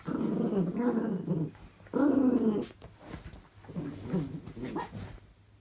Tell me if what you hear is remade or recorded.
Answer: recorded